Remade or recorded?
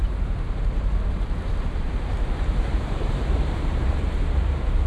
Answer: remade